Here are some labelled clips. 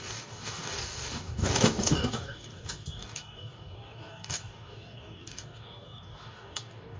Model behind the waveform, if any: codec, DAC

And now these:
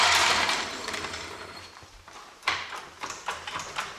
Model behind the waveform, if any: vocoder, BigVGAN v2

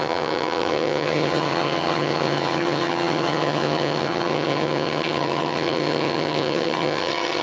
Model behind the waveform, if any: vocoder, HiFi-GAN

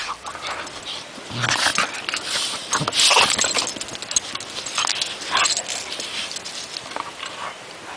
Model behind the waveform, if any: none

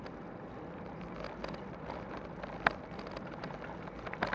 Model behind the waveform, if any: none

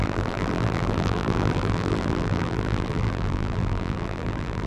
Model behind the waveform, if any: vocoder, BigVGAN v2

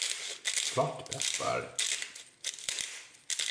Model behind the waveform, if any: none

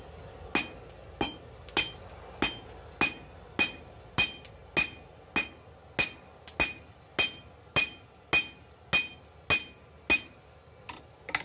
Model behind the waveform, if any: none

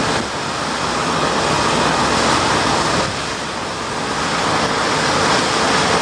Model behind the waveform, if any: none